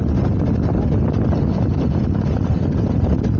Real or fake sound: real